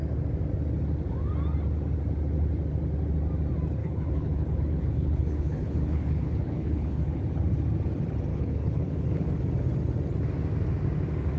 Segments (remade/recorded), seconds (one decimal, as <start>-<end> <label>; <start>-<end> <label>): 0.0-3.8 recorded; 3.8-7.2 remade; 7.2-8.3 recorded; 8.3-9.3 remade; 9.3-11.4 recorded